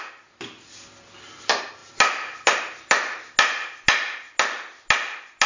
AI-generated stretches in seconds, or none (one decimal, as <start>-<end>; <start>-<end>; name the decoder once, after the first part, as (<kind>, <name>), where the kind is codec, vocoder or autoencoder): none